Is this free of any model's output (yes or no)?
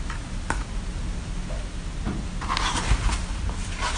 yes